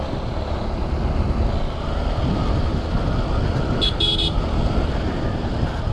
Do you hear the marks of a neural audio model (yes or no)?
no